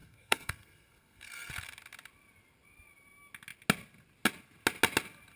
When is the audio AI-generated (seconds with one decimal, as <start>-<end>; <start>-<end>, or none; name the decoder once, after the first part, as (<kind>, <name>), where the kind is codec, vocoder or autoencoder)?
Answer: 0.0-1.5 (codec, SNAC)